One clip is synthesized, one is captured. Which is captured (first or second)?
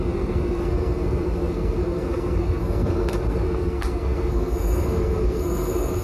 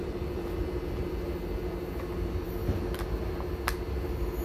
second